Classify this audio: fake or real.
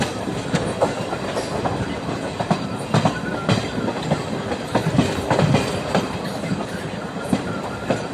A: fake